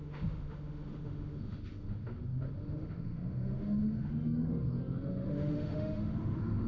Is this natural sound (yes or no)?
no